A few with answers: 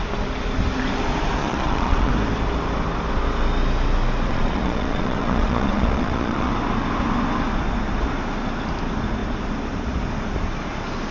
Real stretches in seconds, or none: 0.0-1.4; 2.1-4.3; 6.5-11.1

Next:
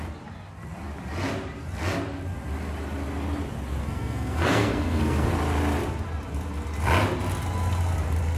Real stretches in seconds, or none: 0.0-3.8; 5.3-8.4

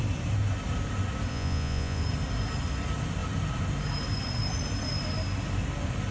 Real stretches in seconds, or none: 0.0-1.3; 2.0-6.1

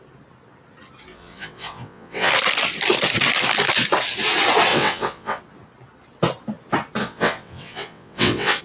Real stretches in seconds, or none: 0.0-1.1; 2.3-4.7; 5.4-7.0

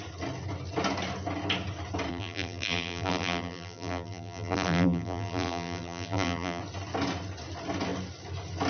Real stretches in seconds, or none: 0.0-2.1; 6.6-8.7